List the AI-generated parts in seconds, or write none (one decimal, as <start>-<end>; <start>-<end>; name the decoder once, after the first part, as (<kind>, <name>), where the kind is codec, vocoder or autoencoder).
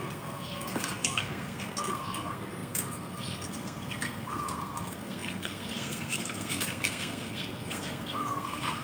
0.0-8.8 (codec, SNAC)